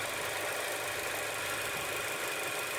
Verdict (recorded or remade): recorded